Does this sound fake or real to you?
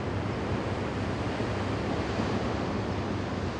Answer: real